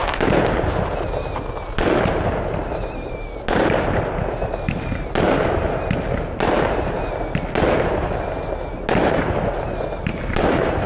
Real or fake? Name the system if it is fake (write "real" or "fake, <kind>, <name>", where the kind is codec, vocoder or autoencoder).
real